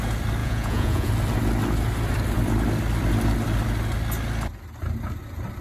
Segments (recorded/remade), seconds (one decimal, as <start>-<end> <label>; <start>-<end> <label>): 0.0-0.4 recorded; 0.4-1.1 remade; 1.1-5.6 recorded